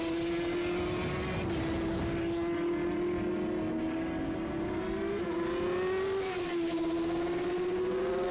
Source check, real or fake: real